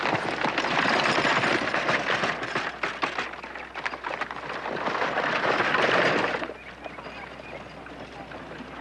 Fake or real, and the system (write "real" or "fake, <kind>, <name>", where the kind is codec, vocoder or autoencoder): real